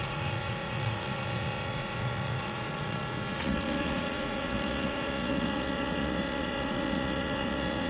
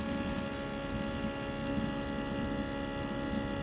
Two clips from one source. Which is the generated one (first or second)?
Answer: first